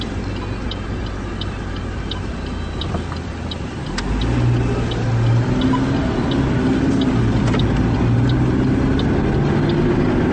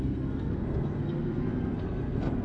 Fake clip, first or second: second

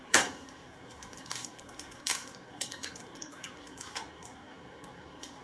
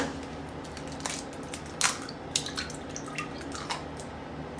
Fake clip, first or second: first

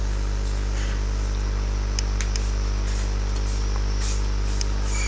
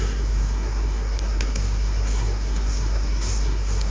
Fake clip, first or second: second